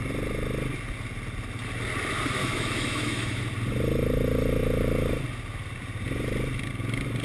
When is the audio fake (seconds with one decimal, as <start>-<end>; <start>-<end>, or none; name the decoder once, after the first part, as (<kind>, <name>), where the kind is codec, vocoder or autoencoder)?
2.4-3.4 (autoencoder, DAC-VAE)